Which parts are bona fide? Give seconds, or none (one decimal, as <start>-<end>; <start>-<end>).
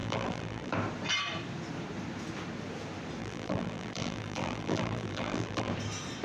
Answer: 0.7-3.2; 5.7-6.2